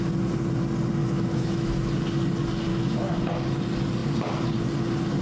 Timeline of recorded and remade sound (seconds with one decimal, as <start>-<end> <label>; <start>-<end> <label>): 0.0-1.0 recorded; 1.0-1.9 remade; 1.9-2.7 recorded; 2.7-3.2 remade; 3.2-5.2 recorded